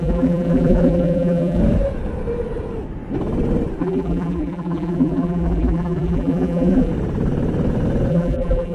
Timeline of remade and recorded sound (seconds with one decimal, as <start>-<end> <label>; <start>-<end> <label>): 0.0-1.6 remade; 1.6-3.8 recorded; 3.8-6.9 remade; 6.9-8.1 recorded; 8.1-8.7 remade